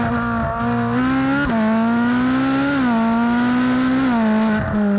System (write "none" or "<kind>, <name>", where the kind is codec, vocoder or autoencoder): none